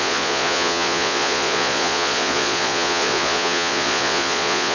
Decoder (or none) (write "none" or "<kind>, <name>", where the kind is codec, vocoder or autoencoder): vocoder, Vocos